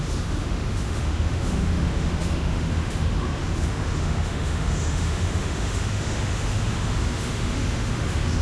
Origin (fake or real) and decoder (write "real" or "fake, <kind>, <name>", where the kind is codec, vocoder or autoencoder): fake, autoencoder, DAC-VAE